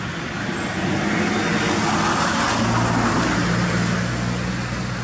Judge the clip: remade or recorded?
recorded